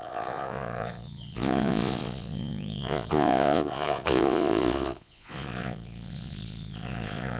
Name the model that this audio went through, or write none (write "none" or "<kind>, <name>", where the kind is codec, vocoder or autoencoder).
vocoder, Vocos